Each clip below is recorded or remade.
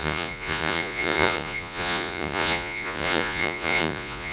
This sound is remade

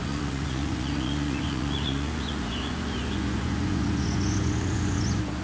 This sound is remade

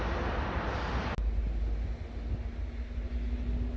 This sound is recorded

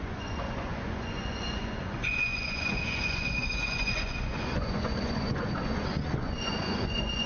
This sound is remade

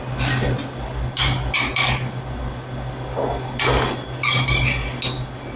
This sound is recorded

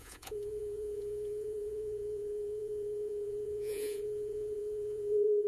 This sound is remade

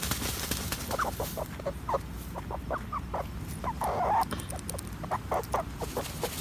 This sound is recorded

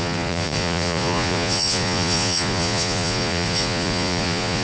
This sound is remade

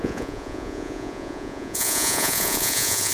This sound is remade